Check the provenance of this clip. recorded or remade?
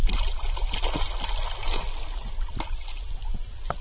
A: recorded